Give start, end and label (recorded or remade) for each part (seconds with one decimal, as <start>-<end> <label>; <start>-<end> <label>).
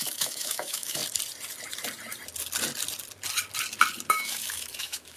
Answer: 0.0-1.0 remade; 1.0-4.1 recorded; 4.1-5.2 remade